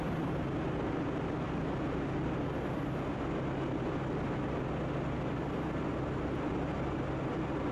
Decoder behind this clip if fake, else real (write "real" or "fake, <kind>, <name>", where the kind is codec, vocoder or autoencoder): real